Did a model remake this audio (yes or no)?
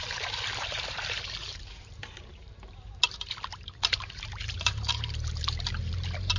yes